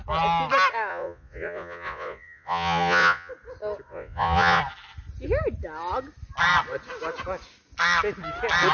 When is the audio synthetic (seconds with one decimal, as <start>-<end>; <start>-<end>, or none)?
0.9-3.3; 3.9-4.6